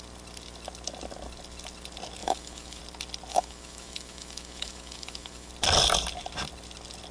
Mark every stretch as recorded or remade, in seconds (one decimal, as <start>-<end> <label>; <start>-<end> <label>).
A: 0.0-2.2 recorded; 2.2-2.8 remade; 2.8-3.3 recorded; 3.3-5.5 remade; 5.5-7.1 recorded